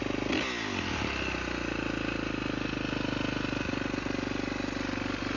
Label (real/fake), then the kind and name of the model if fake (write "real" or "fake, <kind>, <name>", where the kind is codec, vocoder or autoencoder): real